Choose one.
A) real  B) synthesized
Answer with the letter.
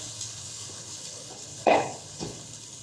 B